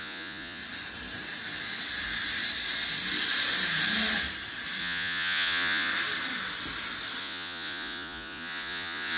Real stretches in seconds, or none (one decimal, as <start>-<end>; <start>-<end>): 0.6-4.8; 5.9-7.2